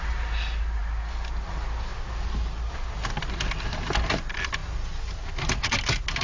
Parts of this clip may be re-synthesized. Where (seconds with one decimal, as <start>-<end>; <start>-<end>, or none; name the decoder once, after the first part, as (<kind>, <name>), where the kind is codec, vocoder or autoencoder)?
none